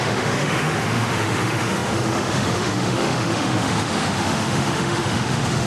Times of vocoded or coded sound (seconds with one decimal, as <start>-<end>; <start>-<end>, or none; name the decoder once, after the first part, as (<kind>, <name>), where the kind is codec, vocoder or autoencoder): 0.0-5.7 (autoencoder, DAC-VAE)